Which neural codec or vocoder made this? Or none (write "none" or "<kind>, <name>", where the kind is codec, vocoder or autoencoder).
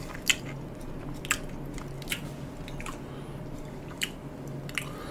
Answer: none